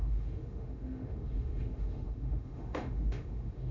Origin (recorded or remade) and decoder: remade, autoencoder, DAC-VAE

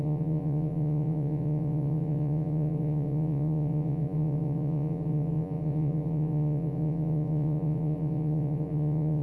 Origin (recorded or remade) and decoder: remade, vocoder, Vocos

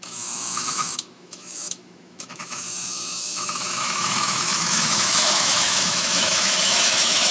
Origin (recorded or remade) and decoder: remade, autoencoder, DAC-VAE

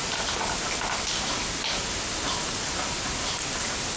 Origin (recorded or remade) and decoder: recorded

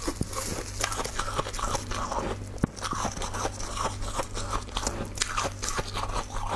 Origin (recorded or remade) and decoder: recorded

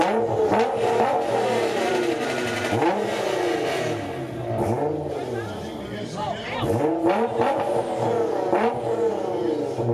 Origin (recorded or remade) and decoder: recorded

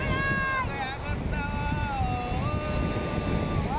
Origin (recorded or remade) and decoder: recorded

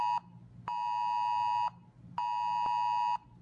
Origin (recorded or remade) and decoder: recorded